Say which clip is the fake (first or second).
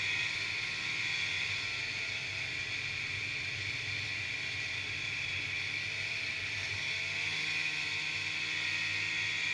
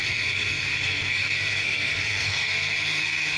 second